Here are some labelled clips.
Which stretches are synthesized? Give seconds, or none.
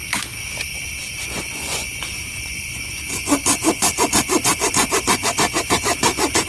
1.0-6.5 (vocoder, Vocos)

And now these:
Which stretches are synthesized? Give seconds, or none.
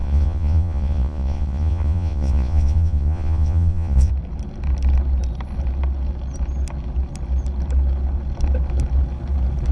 0.0-4.1 (vocoder, Vocos)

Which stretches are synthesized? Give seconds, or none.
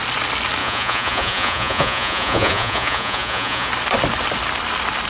0.6-3.7 (vocoder, Vocos)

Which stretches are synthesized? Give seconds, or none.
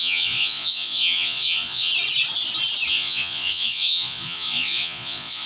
0.0-1.9 (vocoder, Vocos); 2.9-5.5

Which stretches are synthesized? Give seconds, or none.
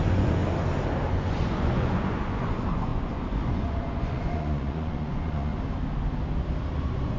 0.0-0.4 (vocoder, Vocos); 1.1-5.5; 6.8-7.2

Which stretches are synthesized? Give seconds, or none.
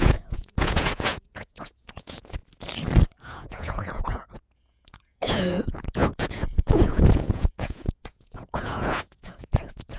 0.0-2.4 (vocoder, Vocos); 3.2-10.0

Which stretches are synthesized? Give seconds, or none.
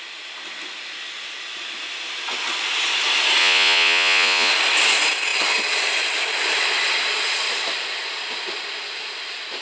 3.4-4.5 (vocoder, Vocos)